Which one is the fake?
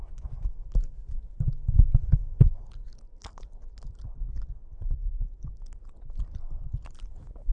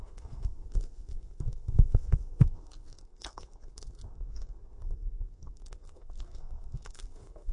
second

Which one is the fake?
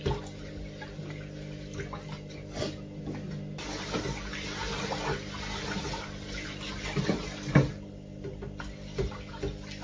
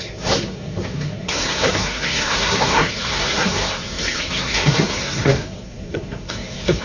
second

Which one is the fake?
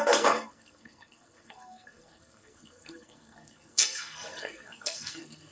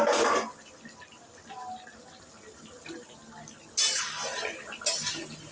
first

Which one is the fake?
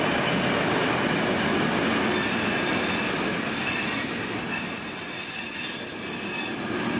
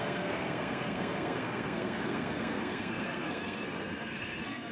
second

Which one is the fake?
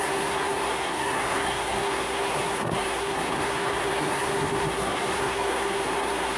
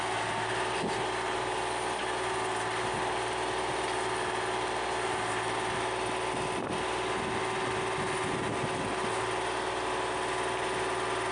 first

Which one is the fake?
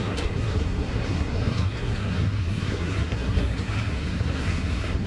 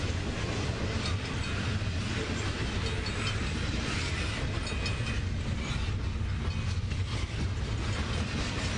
first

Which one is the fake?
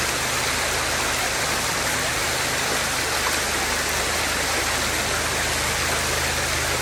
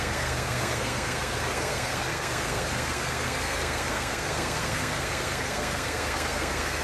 second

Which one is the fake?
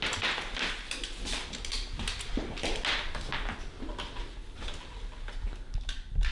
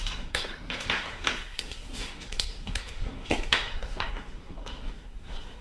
second